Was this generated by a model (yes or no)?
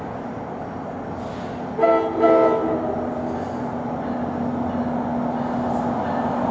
no